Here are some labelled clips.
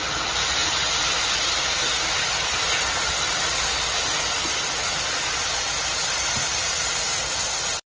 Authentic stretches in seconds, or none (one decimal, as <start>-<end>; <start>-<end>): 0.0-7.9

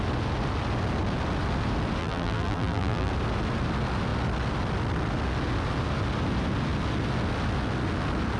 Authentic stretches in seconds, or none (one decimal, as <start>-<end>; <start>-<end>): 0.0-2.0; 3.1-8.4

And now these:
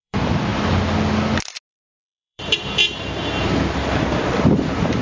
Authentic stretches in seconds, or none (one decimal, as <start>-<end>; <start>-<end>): 0.5-1.7; 2.8-3.4

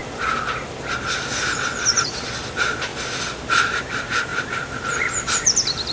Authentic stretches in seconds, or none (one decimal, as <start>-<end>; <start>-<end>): 0.0-1.8; 2.9-3.6

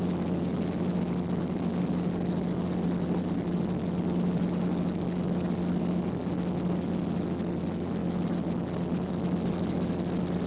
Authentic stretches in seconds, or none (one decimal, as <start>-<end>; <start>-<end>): 0.0-10.5